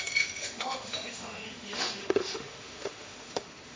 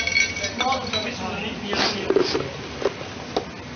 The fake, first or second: first